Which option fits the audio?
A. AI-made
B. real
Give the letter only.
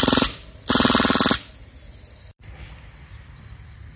B